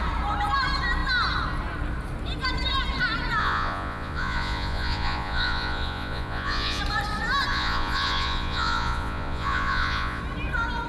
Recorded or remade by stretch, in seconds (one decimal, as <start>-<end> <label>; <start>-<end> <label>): 0.0-3.4 recorded; 3.4-6.8 remade; 6.8-7.5 recorded; 7.5-10.2 remade; 10.2-10.9 recorded